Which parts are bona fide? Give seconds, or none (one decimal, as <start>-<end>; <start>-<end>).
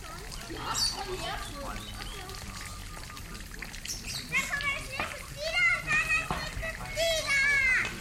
0.0-8.0